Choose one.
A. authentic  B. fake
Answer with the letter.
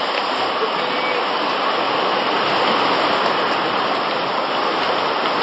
A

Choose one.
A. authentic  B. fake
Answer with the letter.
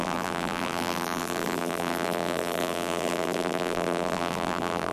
B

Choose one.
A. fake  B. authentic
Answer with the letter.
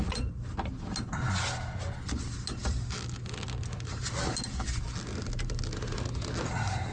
B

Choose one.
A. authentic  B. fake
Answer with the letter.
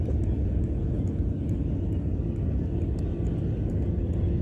A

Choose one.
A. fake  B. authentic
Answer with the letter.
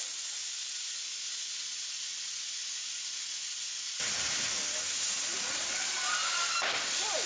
B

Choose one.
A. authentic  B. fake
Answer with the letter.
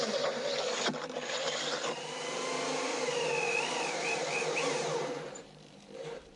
B